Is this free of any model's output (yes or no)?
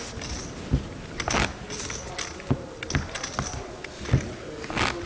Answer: yes